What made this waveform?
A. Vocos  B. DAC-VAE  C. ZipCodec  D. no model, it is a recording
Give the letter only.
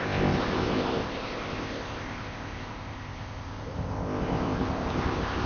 C